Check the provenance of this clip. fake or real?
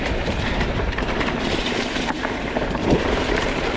fake